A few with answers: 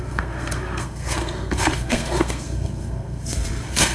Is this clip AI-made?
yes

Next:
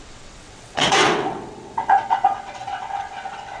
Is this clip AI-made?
yes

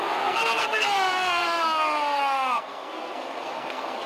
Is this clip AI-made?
yes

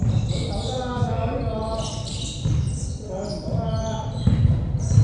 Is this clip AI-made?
no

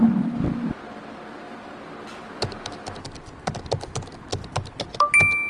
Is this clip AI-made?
no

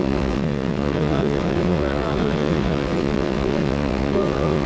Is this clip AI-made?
yes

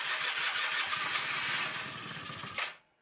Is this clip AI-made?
no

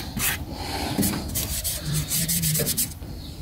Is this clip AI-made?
yes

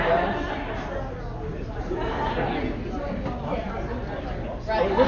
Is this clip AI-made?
no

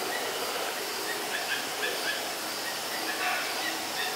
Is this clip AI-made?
no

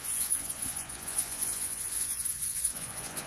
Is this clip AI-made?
yes